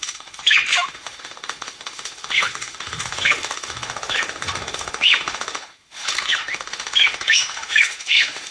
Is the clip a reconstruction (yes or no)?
yes